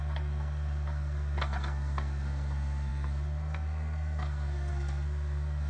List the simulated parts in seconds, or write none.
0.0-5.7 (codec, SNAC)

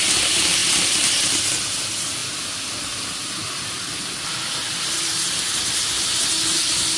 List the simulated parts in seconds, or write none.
none

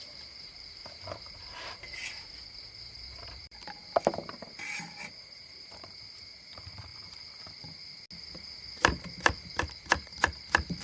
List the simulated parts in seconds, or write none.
0.0-2.0 (vocoder, BigVGAN v2); 2.6-3.8; 5.2-6.9; 9.6-10.8

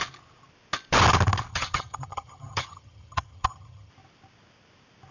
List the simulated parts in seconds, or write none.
1.5-3.9 (vocoder, HiFi-GAN)

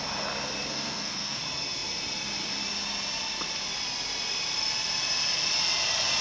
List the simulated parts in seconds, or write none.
0.7-1.4 (codec, SNAC)